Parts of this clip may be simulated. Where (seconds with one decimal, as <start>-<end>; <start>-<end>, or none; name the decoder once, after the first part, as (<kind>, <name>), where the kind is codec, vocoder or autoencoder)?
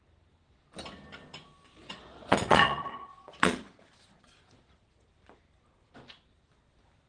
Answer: 1.8-4.8 (vocoder, Vocos)